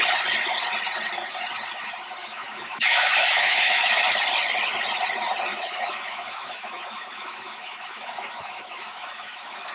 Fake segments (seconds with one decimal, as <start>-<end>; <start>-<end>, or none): 2.2-4.0; 5.5-9.7